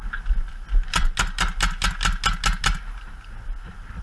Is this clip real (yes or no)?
yes